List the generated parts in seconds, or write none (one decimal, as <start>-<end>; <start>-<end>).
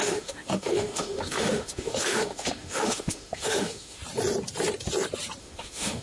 0.0-4.0; 5.4-6.0